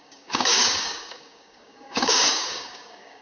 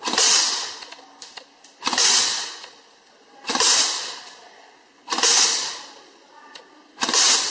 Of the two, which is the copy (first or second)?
first